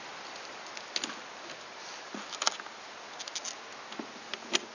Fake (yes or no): no